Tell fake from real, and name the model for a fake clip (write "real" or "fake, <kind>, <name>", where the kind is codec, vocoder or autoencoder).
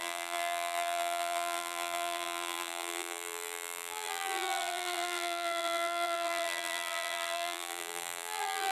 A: fake, vocoder, BigVGAN v2